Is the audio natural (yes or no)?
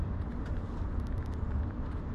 yes